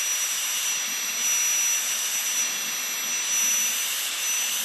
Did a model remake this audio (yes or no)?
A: no